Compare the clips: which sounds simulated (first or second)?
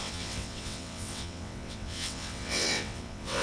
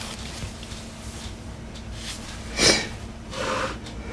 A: first